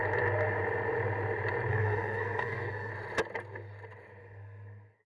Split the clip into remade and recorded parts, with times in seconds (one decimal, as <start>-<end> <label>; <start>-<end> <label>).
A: 0.0-1.7 recorded; 1.7-2.9 remade; 2.9-4.2 recorded; 4.2-5.2 remade